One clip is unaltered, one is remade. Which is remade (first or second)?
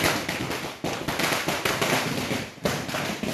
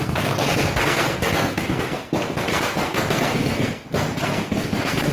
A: second